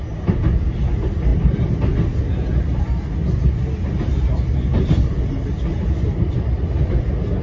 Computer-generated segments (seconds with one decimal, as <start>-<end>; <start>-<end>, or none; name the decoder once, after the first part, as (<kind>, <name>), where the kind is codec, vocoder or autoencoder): none

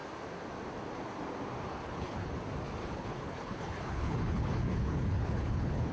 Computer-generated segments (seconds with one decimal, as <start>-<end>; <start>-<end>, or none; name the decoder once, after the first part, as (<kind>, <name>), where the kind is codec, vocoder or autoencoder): 1.7-2.4 (codec, HILCodec); 2.8-5.9

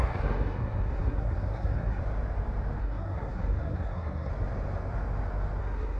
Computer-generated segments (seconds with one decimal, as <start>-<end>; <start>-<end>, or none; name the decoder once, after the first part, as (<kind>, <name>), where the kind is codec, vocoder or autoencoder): 0.0-2.0 (codec, SNAC); 2.8-4.3; 5.6-6.0

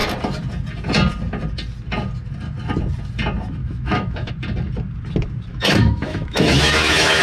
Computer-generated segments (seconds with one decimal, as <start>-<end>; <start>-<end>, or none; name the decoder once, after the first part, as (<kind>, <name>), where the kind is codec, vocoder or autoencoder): 3.6-4.3 (autoencoder, DAC-VAE); 5.5-7.2

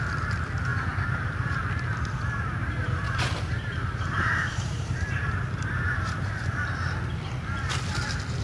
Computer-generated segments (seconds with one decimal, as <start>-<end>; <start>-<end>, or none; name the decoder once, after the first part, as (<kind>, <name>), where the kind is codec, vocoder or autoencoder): 0.7-1.6 (vocoder, BigVGAN v2); 2.6-6.4